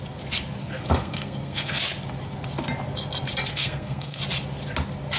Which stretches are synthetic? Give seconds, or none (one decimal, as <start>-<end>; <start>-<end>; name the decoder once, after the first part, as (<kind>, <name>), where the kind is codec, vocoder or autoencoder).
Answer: 0.6-1.8 (codec, SNAC); 3.5-4.2